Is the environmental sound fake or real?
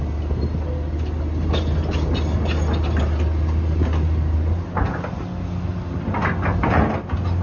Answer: real